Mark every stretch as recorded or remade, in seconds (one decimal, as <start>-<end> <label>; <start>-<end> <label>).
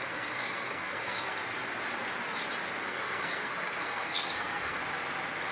0.0-1.4 remade; 1.4-2.8 recorded; 2.8-4.8 remade; 4.8-5.5 recorded